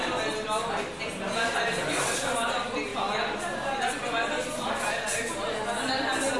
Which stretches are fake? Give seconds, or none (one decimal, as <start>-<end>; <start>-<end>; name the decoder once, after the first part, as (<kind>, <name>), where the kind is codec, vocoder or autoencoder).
none